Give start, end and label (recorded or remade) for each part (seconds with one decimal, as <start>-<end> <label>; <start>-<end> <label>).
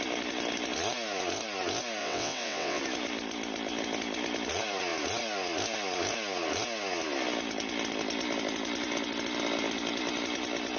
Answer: 0.0-2.0 recorded; 2.0-2.8 remade; 2.8-10.8 recorded